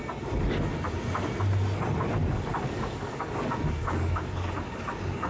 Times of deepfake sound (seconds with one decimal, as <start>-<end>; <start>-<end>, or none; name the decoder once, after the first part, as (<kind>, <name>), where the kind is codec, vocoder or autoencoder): 2.2-5.3 (codec, DAC)

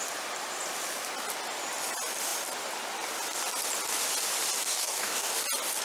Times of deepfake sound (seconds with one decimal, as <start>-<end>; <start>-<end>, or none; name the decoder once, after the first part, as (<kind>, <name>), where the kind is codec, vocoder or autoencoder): 4.6-5.3 (codec, DAC)